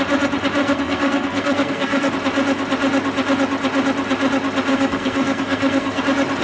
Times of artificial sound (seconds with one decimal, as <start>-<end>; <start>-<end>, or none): 0.6-2.1; 4.7-6.0